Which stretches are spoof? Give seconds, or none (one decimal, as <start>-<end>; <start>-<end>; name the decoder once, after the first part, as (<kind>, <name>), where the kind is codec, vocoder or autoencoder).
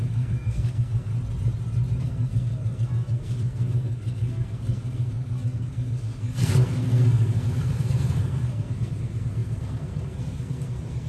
0.0-1.1 (codec, SNAC); 2.0-11.1